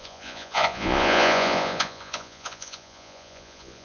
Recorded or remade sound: remade